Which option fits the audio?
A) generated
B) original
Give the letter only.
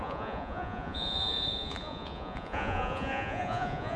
A